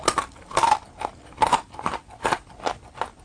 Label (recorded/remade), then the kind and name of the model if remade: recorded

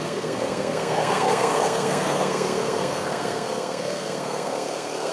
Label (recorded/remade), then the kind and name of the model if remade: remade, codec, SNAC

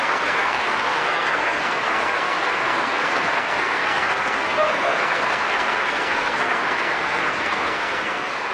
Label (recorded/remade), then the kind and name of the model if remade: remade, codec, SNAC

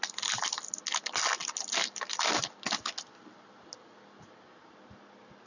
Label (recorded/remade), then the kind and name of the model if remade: recorded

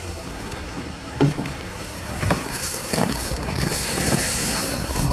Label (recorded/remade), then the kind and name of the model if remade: remade, codec, SNAC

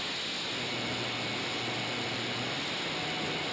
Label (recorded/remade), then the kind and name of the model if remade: recorded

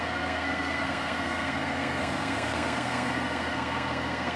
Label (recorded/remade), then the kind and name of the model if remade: remade, codec, SNAC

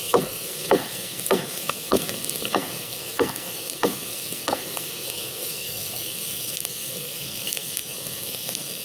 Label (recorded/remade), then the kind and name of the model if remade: remade, codec, SNAC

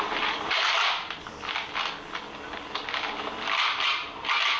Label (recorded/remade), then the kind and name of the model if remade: recorded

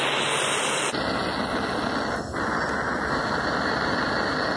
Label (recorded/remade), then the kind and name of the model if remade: recorded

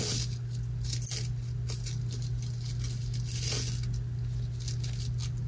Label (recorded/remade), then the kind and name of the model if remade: recorded